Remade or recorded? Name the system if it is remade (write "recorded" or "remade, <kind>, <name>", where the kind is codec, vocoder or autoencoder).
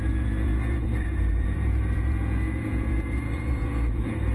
remade, vocoder, Vocos